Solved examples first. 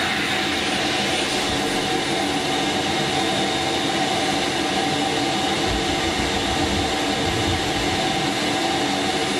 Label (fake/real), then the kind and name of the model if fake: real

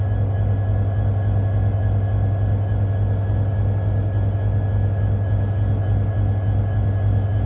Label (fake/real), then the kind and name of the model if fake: real